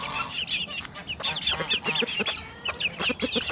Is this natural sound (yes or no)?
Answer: yes